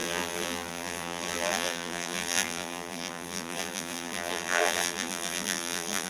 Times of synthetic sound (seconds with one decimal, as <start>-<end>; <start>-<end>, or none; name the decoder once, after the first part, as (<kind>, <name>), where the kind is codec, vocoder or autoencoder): 0.0-6.1 (vocoder, BigVGAN v2)